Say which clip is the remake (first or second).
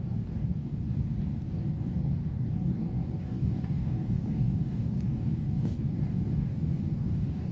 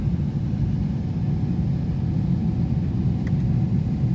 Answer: first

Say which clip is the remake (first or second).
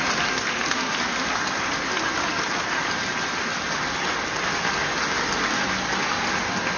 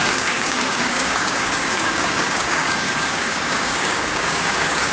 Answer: second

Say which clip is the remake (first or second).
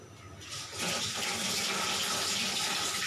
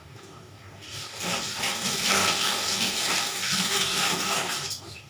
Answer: second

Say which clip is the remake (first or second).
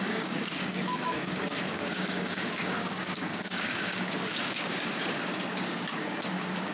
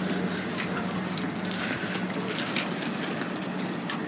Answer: first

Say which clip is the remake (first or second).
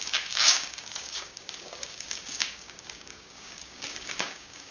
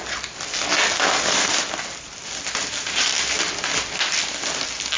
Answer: first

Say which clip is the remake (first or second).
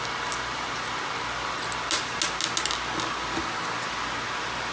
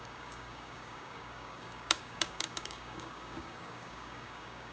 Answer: second